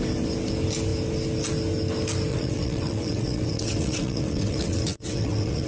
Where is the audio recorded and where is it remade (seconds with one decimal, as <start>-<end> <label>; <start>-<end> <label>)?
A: 0.0-2.3 recorded; 2.3-5.7 remade